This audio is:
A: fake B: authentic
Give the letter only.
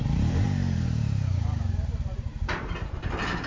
A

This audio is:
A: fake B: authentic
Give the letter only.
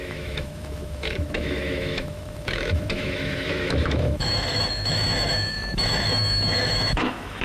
A